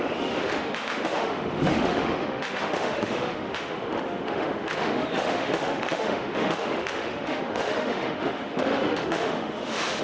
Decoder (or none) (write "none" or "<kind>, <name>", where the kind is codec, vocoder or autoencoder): autoencoder, DAC-VAE